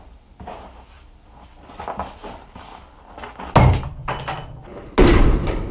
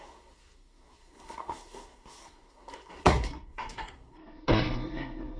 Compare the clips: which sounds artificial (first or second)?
second